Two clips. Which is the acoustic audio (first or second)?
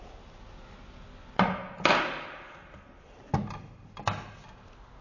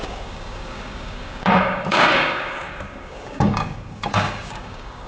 first